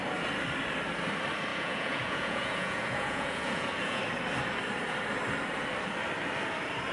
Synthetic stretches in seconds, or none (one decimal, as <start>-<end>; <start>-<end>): 1.5-4.0